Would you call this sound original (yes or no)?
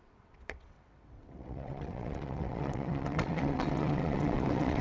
no